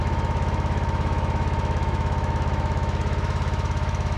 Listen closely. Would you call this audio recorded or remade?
remade